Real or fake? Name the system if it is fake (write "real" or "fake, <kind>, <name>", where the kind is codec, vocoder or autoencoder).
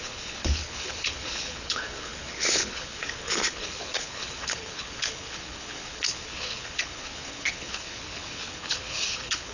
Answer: fake, codec, HILCodec